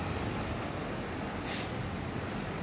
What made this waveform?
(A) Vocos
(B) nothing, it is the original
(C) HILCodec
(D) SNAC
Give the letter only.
B